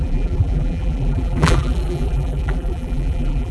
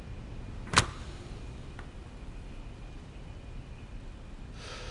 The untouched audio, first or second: second